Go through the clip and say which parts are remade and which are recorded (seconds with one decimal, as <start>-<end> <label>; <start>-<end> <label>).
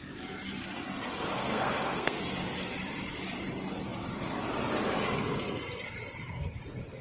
0.0-1.4 recorded; 1.4-2.2 remade; 2.2-7.0 recorded